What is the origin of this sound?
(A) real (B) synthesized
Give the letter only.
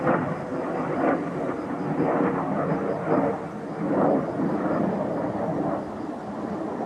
A